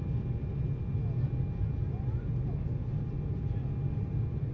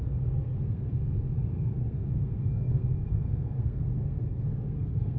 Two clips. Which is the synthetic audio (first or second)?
second